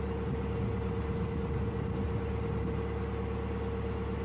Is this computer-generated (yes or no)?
no